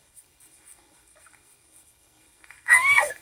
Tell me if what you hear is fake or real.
fake